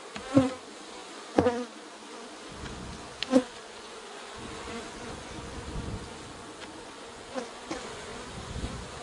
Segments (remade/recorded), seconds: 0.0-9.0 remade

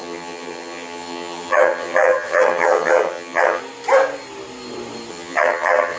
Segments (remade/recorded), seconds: 0.0-3.6 remade; 3.6-5.1 recorded; 5.1-6.0 remade

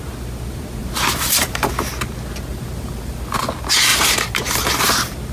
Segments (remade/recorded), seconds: 0.0-0.8 recorded; 0.8-1.7 remade; 1.7-2.5 recorded; 2.5-3.4 remade; 3.4-3.9 recorded; 3.9-4.7 remade; 4.7-5.3 recorded

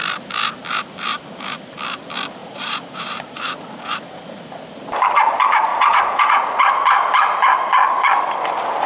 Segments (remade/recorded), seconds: 0.0-2.4 recorded; 2.4-4.6 remade; 4.6-5.7 recorded; 5.7-6.6 remade; 6.6-8.9 recorded

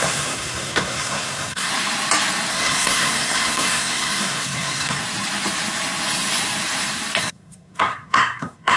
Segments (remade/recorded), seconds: 0.0-1.7 remade; 1.7-2.5 recorded; 2.5-5.0 remade; 5.0-7.2 recorded; 7.2-8.8 remade

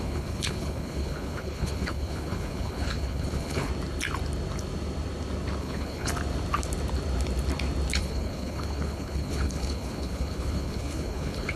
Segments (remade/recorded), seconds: 0.0-3.7 remade; 3.7-5.6 recorded; 5.6-6.1 remade; 6.1-8.0 recorded; 8.0-11.6 remade

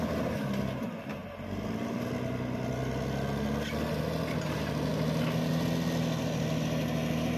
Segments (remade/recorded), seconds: 0.0-7.4 recorded

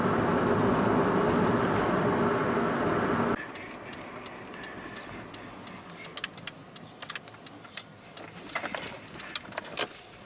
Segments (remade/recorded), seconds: 0.0-10.3 recorded